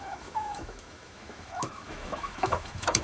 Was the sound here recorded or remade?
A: remade